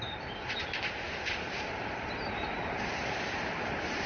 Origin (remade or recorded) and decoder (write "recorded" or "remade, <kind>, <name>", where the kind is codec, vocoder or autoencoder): remade, vocoder, BigVGAN v2